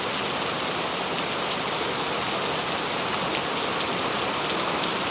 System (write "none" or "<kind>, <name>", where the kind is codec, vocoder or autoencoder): none